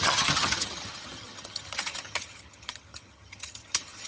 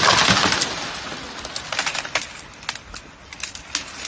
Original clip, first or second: second